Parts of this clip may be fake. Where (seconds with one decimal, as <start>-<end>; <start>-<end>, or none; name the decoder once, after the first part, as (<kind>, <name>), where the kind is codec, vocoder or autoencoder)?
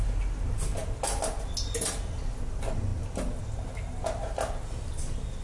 none